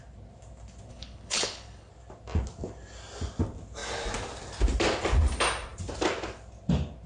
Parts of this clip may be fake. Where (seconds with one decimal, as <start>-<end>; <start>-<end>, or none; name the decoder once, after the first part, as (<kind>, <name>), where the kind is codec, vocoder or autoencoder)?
0.9-1.9 (codec, HILCodec)